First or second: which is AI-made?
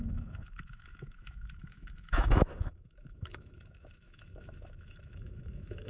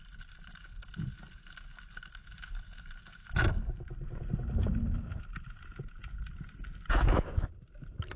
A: first